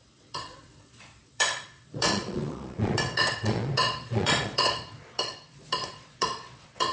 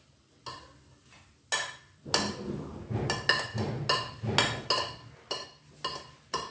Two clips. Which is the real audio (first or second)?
second